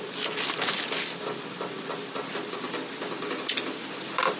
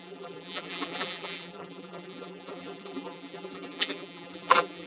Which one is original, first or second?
first